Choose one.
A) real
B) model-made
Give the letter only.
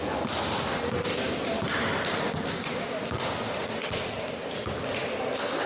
A